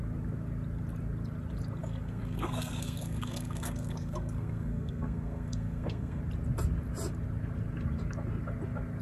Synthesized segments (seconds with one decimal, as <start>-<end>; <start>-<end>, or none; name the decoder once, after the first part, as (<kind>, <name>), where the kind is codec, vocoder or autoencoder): 1.8-6.2 (codec, SNAC)